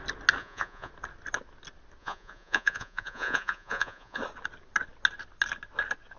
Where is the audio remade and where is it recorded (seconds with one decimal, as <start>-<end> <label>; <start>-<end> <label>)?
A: 0.0-0.4 recorded; 0.4-0.9 remade; 0.9-2.0 recorded; 2.0-4.2 remade; 4.2-6.2 recorded